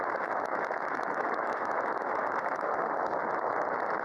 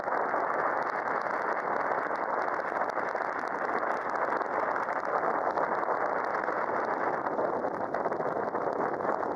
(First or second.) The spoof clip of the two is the first